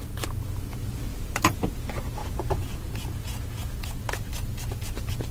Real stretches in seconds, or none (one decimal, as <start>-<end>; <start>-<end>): 0.0-1.1; 1.7-2.2; 4.3-5.3